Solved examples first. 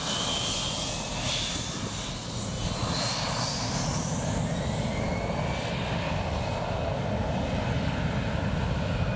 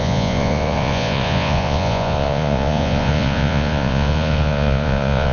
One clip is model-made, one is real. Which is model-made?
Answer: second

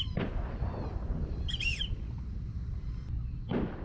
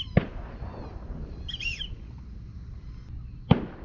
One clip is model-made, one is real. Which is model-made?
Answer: first